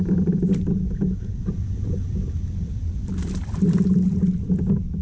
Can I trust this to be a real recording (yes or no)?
yes